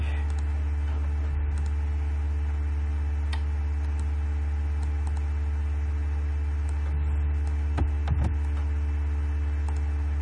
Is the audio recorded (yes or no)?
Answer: yes